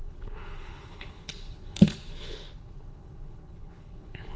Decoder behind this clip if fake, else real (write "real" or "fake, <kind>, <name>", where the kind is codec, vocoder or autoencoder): fake, codec, HILCodec